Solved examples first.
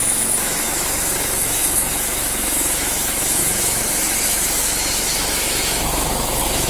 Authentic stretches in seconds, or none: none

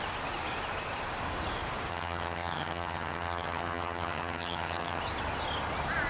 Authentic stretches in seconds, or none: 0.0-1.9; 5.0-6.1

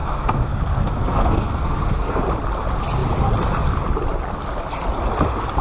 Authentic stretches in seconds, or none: 2.2-5.6